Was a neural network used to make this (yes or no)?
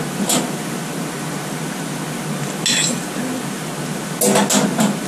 no